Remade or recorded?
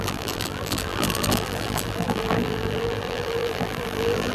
remade